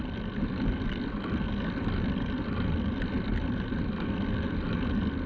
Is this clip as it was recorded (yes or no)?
yes